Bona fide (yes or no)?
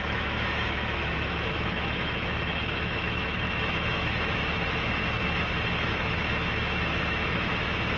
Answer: no